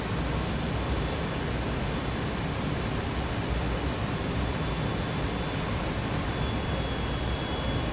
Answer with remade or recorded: recorded